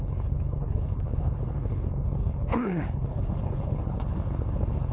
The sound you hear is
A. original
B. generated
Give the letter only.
B